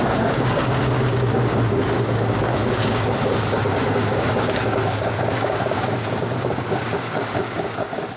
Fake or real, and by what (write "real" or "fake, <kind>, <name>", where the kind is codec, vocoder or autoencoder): fake, codec, DAC